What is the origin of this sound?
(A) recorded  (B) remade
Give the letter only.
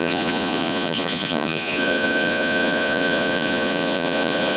B